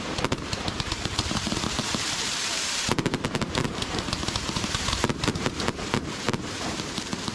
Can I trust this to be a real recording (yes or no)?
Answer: no